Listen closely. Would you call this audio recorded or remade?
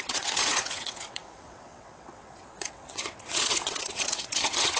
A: remade